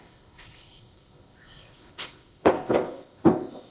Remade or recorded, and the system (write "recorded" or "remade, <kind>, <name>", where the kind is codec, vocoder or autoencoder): remade, codec, ZipCodec